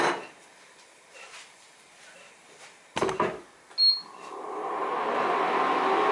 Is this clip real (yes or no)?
yes